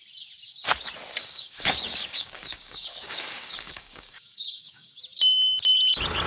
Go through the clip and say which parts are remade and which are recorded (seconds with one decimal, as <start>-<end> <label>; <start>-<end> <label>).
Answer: 0.0-1.2 recorded; 1.2-5.0 remade; 5.0-6.3 recorded